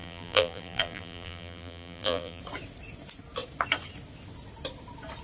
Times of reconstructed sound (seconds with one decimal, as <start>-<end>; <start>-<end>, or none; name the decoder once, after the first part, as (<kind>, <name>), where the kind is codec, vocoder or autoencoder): 0.0-2.4 (vocoder, BigVGAN v2)

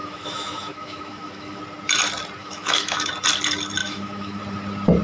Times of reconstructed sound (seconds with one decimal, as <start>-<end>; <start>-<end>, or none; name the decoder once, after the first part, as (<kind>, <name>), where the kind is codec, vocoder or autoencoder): 0.0-1.6 (autoencoder, DAC-VAE); 2.4-3.1; 3.8-4.4

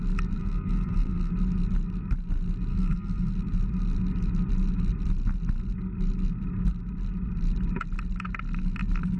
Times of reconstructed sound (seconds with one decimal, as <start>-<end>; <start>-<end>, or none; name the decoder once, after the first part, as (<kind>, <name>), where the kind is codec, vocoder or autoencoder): 0.4-1.3 (codec, SNAC); 2.7-3.3

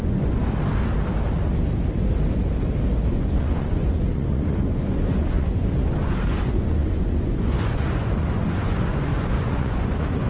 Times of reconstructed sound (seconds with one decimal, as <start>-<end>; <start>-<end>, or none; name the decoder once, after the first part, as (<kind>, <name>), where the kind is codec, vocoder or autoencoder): 0.0-0.4 (vocoder, Vocos); 3.1-10.3

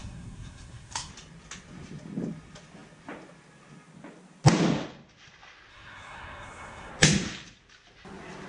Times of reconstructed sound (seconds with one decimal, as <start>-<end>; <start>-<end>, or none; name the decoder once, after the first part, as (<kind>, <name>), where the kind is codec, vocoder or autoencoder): 0.0-1.1 (codec, SNAC); 5.7-6.9

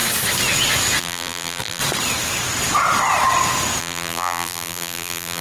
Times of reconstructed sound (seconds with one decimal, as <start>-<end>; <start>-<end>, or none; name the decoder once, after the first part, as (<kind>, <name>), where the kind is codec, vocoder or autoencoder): 1.0-1.8 (vocoder, BigVGAN v2); 3.8-5.4

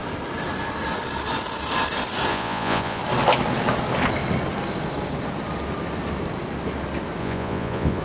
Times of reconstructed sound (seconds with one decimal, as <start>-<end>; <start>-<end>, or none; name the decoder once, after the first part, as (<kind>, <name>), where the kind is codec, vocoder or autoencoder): 2.3-3.0 (vocoder, Vocos); 7.2-8.0

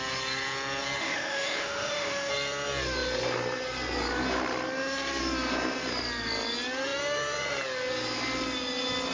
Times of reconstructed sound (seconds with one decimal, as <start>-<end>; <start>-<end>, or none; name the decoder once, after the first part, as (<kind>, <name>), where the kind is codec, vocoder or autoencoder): 1.0-2.3 (autoencoder, DAC-VAE)